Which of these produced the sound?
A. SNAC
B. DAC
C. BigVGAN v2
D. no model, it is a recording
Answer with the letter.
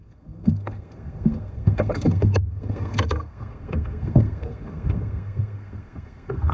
A